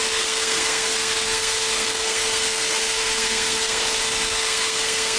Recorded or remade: remade